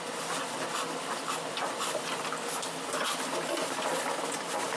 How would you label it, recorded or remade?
recorded